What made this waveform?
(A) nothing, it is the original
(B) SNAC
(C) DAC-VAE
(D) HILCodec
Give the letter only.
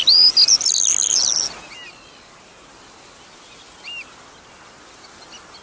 A